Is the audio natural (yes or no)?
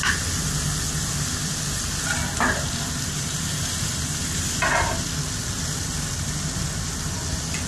yes